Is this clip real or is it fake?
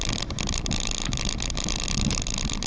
real